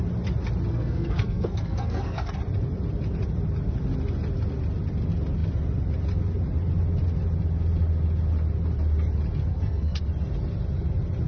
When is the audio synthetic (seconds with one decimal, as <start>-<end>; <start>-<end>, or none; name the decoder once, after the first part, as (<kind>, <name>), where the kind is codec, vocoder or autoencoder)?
0.7-2.3 (codec, SNAC); 9.5-10.0